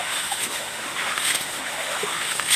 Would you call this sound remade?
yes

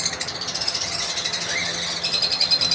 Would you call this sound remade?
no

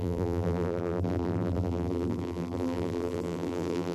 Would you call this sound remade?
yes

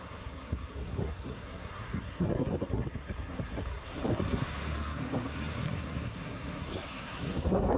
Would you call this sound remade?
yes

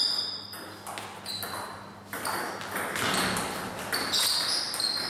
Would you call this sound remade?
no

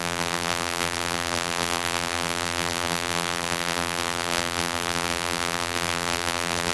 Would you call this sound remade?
yes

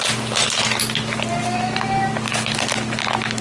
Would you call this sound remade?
no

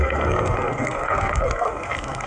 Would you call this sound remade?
yes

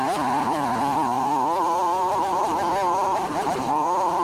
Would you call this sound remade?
yes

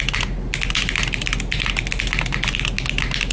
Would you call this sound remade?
no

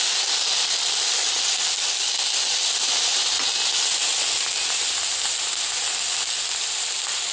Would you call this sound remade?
no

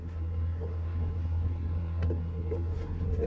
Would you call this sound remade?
yes